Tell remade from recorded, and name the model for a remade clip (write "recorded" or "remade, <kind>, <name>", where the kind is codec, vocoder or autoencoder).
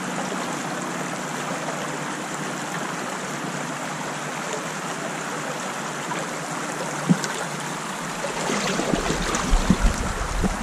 recorded